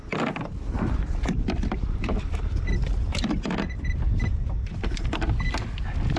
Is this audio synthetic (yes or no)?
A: no